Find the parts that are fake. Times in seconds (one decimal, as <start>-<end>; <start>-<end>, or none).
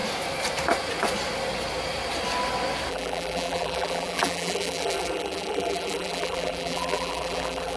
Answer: 2.9-7.8